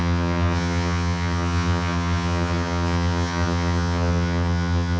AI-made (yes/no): yes